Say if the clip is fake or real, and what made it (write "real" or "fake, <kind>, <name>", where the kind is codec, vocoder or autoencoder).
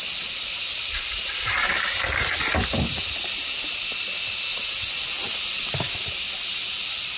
real